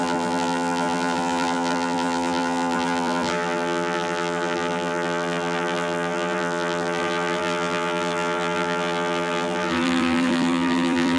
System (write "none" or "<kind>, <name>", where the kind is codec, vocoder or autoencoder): vocoder, BigVGAN v2